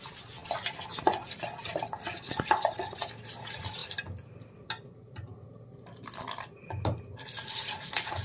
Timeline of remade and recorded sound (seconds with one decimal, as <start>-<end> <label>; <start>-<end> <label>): 0.0-8.2 recorded